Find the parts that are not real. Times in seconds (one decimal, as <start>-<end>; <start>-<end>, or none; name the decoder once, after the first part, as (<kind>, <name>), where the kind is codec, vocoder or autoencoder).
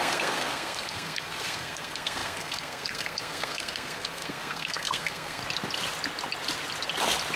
0.0-5.4 (codec, SNAC)